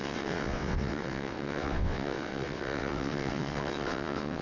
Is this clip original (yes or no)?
no